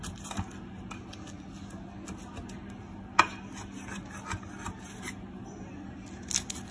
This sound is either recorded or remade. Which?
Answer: recorded